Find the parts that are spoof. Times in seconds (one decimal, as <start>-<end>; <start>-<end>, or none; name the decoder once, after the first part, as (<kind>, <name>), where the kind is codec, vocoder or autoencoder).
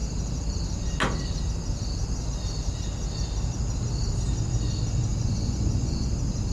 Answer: 5.1-6.1 (vocoder, Vocos)